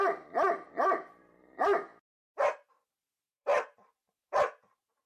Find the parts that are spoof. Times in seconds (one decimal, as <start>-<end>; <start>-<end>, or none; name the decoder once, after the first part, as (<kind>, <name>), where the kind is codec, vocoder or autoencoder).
0.0-1.9 (vocoder, BigVGAN v2); 3.1-3.5